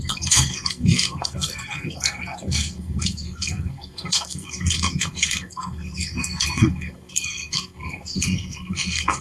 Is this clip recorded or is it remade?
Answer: remade